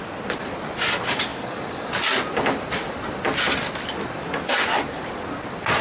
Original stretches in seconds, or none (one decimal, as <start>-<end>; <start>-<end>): 0.0-1.3; 1.9-5.8